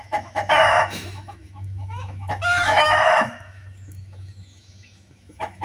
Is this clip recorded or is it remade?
remade